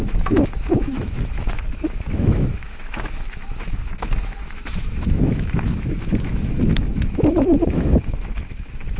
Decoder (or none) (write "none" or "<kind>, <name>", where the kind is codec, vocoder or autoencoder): autoencoder, DAC-VAE